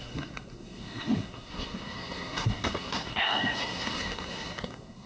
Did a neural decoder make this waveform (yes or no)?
yes